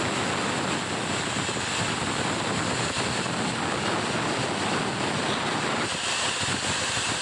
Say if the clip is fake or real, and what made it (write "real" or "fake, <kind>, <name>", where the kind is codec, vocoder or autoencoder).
real